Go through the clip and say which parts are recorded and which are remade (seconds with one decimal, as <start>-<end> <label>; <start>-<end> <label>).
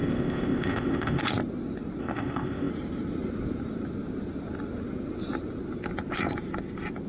0.0-1.2 remade; 1.2-2.0 recorded; 2.0-2.7 remade; 2.7-7.1 recorded